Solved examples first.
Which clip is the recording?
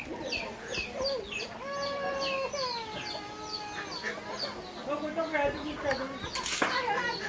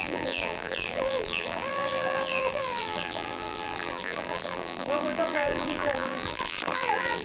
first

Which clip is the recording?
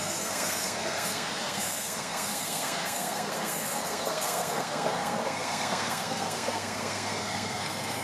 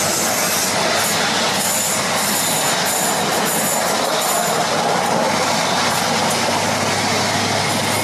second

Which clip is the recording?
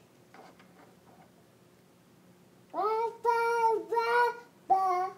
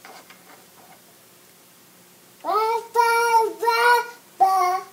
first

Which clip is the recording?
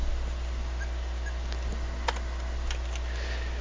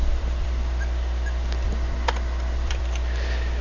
first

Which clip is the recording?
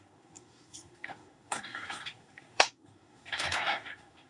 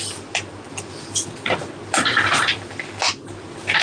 second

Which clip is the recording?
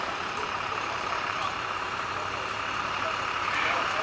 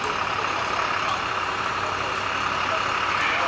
second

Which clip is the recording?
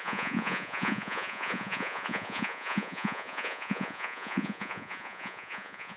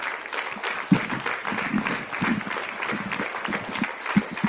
second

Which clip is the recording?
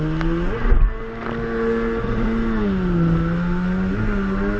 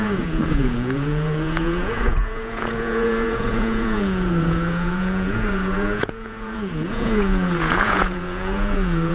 first